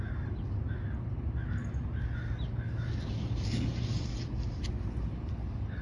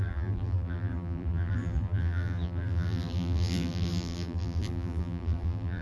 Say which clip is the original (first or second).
first